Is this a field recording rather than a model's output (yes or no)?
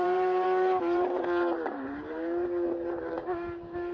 no